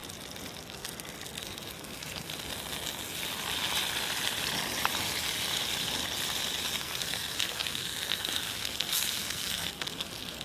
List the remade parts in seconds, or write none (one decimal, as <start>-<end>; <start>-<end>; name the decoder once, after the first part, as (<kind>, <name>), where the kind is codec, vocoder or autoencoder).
0.6-2.3 (codec, SNAC); 6.8-10.4